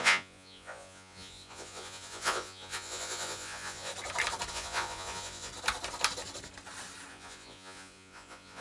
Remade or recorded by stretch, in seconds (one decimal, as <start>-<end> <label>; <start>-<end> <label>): 0.0-3.9 remade; 3.9-4.5 recorded; 4.5-5.5 remade; 5.5-7.1 recorded; 7.1-8.6 remade